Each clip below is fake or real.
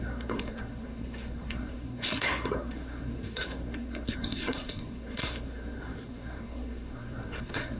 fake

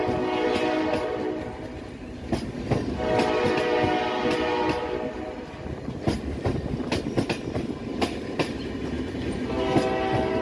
real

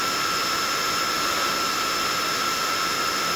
real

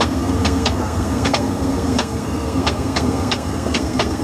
fake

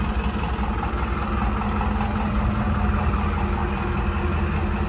real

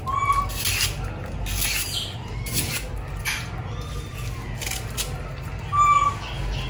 real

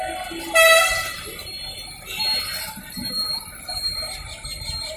real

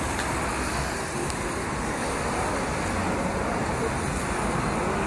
real